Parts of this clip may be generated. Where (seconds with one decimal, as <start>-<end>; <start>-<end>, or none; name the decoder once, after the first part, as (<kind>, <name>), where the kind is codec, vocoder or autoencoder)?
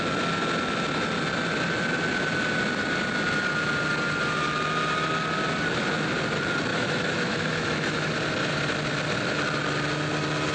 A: 6.7-8.1 (autoencoder, DAC-VAE)